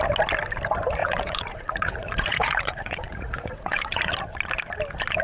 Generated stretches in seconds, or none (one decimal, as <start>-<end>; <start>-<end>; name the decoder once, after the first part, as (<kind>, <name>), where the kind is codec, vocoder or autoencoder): 1.0-4.1 (vocoder, Vocos)